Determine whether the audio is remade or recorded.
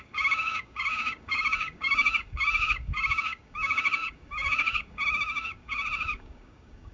remade